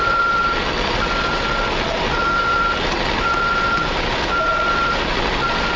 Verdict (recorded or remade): remade